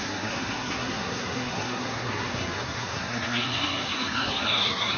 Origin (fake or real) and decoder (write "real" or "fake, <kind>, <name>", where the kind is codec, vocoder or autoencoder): fake, codec, SNAC